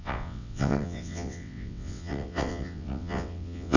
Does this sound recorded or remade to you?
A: remade